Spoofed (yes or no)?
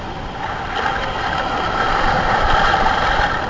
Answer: yes